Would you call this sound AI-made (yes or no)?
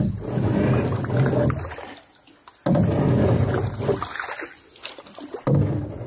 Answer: no